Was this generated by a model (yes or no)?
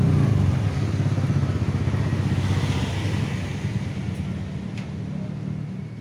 no